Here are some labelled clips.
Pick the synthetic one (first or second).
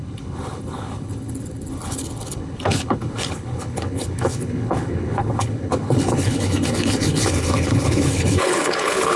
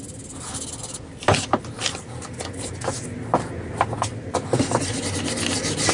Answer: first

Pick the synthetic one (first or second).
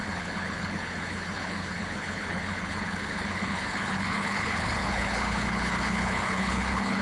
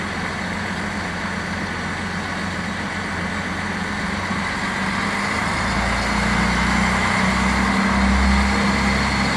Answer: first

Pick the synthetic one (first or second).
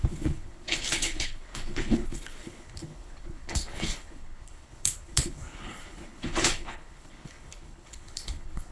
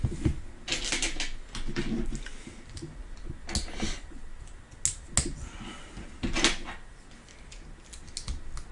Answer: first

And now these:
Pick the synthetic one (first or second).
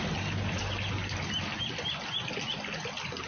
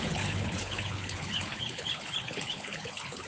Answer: second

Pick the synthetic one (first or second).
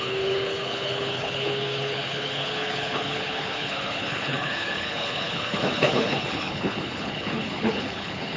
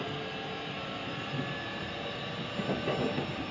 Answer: first